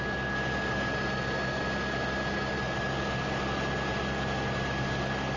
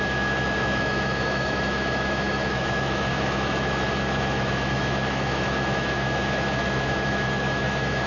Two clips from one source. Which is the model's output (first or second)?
second